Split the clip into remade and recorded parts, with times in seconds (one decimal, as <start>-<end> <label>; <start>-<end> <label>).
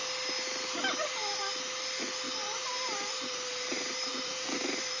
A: 0.0-2.4 recorded; 2.4-5.0 remade